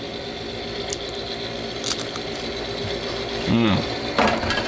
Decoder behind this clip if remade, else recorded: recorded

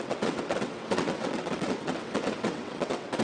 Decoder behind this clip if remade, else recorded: remade, vocoder, WaveNeXt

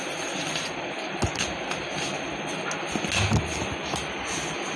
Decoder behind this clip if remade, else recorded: recorded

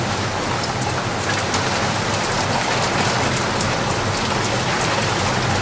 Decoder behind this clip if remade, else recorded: recorded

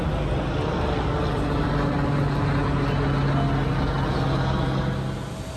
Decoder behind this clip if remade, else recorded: recorded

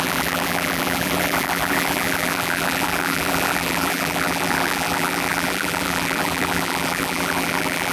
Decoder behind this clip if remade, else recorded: remade, vocoder, BigVGAN v2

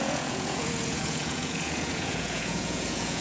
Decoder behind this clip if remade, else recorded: remade, vocoder, Vocos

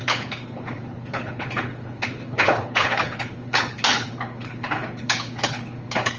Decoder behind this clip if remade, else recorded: remade, codec, HILCodec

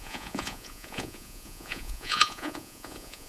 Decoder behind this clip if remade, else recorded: remade, vocoder, Vocos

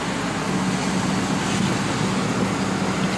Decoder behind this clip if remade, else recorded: recorded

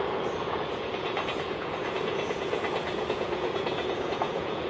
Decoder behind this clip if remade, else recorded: remade, vocoder, Vocos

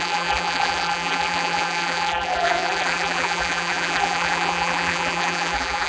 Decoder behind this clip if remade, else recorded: remade, vocoder, BigVGAN v2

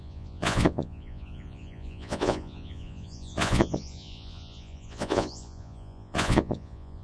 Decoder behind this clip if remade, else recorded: remade, vocoder, Vocos